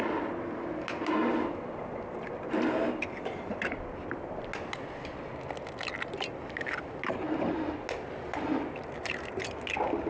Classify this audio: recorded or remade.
recorded